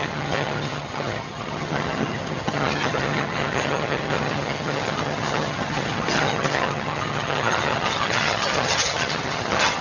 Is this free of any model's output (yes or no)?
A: no